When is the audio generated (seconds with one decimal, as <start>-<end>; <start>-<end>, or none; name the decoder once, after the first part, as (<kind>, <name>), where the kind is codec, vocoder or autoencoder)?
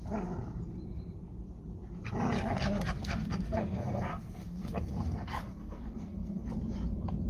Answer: 3.0-6.5 (codec, SNAC)